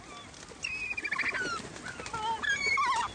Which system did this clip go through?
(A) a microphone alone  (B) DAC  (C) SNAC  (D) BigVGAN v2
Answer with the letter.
A